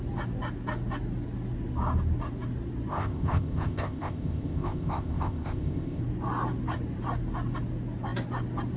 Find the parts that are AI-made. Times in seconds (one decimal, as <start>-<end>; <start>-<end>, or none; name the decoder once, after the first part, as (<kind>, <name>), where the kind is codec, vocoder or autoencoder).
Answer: 2.9-6.0 (codec, ZipCodec)